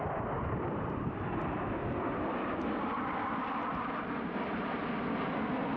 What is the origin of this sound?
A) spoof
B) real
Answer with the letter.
B